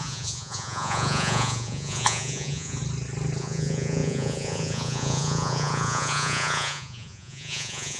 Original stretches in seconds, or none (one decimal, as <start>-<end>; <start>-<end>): 2.8-3.4